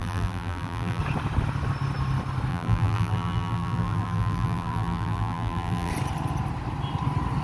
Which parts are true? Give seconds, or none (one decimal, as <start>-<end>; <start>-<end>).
1.0-2.5; 5.9-7.4